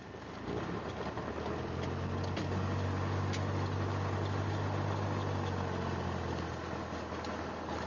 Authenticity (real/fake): real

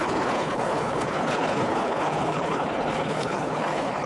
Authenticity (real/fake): fake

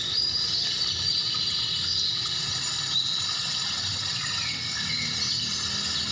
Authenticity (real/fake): real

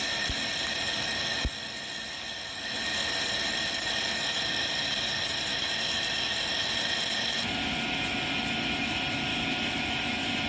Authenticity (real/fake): real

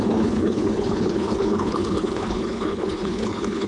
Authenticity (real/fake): fake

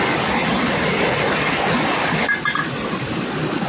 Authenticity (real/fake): real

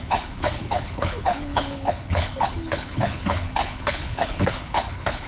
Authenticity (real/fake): fake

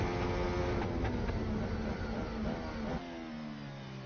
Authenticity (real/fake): real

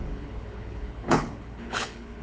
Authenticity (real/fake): fake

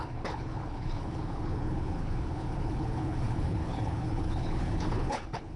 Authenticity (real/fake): fake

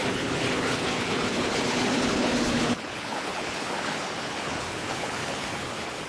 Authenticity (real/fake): fake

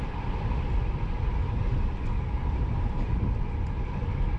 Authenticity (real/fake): real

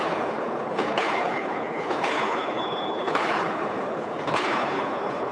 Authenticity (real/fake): fake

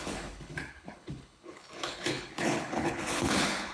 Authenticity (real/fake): fake